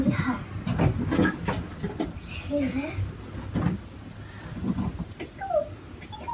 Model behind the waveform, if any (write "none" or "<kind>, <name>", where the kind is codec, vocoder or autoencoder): none